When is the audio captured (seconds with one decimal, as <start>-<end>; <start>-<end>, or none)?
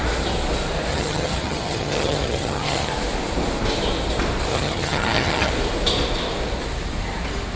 0.0-0.9; 2.9-4.5; 5.5-7.6